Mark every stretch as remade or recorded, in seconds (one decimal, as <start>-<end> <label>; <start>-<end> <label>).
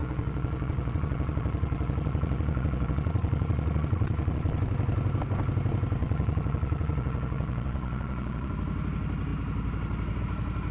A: 0.0-4.6 remade; 4.6-6.0 recorded; 6.0-8.5 remade; 8.5-10.7 recorded